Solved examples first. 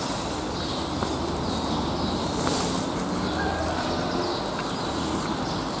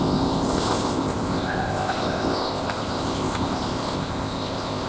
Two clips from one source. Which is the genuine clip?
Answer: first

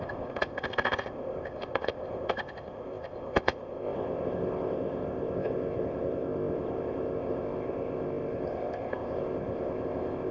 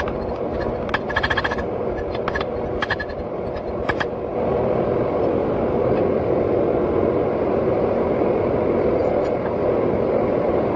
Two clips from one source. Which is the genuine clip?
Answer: second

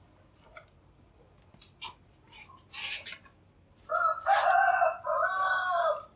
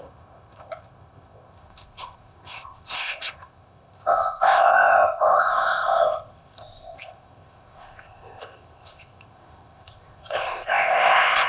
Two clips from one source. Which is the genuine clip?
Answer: first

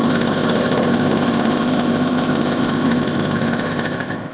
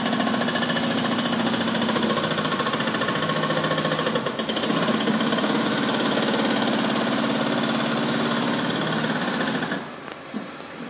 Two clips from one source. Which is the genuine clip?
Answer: second